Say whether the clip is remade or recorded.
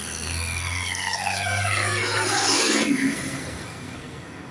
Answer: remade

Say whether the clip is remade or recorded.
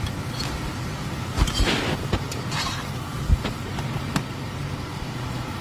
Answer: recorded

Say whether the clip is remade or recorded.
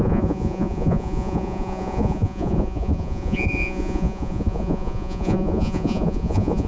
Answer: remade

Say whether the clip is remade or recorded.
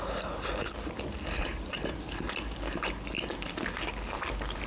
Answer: recorded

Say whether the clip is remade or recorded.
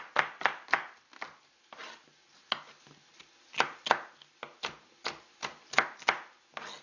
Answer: recorded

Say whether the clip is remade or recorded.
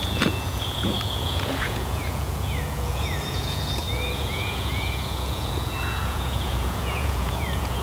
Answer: remade